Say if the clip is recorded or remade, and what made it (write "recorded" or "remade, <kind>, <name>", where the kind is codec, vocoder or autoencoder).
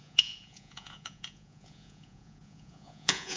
remade, vocoder, Vocos